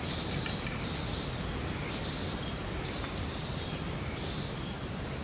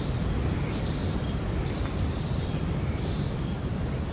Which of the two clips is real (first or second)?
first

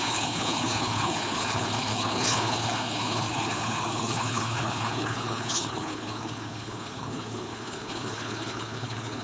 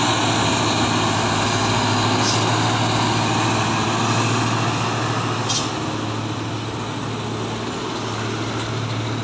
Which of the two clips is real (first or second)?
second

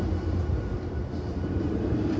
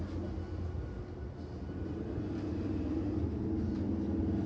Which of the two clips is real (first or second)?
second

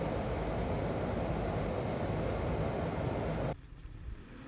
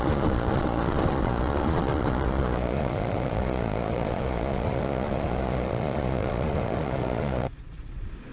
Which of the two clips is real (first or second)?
first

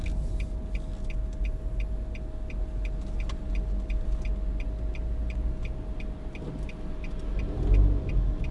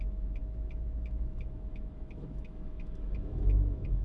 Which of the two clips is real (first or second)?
first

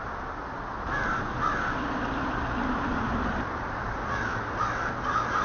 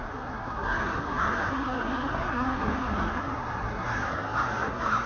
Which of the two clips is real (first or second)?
first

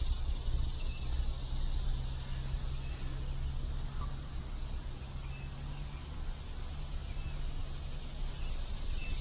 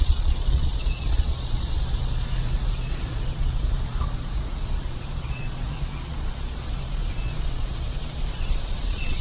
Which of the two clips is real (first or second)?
first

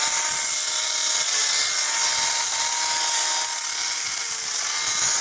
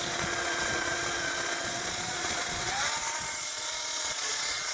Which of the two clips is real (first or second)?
first